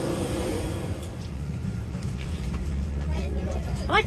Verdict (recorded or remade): remade